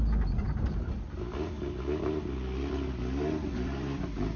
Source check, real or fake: real